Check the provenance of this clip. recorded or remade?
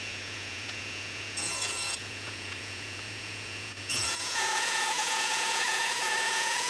remade